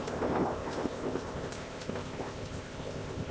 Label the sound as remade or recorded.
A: remade